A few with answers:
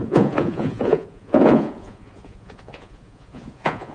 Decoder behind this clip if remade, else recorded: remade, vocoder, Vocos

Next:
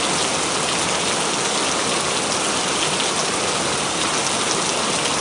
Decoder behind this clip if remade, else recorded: recorded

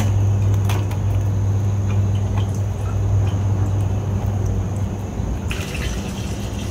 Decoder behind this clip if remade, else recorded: recorded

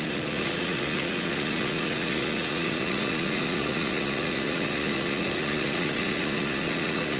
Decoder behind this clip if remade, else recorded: remade, vocoder, Vocos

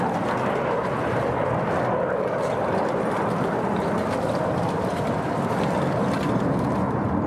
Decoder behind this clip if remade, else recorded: recorded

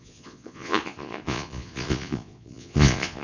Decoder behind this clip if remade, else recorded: remade, vocoder, Vocos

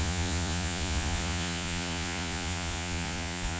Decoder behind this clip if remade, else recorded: remade, vocoder, Vocos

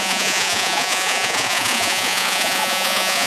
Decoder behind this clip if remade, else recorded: remade, vocoder, Vocos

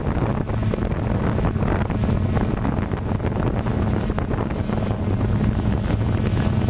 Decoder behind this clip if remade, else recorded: recorded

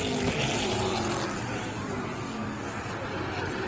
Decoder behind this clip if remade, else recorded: recorded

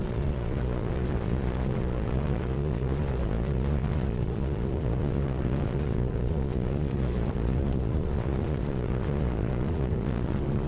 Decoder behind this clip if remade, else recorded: remade, vocoder, Vocos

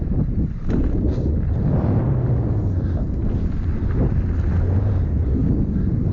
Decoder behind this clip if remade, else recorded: recorded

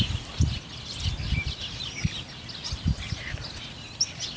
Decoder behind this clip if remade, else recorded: recorded